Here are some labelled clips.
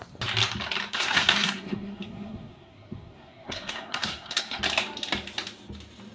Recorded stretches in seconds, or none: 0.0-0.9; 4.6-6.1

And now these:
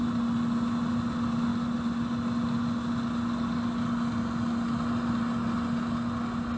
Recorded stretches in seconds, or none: 0.0-6.6

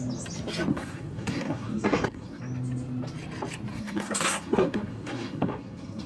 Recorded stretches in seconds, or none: 0.0-0.7; 2.4-3.7

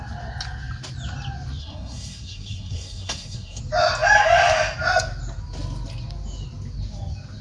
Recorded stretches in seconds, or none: 0.0-1.6; 3.6-7.4

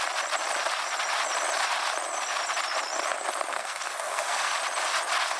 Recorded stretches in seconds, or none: 0.0-3.5; 4.5-5.4